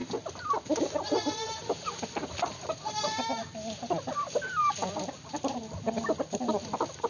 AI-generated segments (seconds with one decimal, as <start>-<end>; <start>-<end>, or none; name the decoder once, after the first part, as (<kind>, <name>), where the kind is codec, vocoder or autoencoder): none